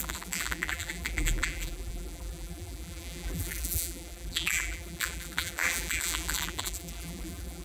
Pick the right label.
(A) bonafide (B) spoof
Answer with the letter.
B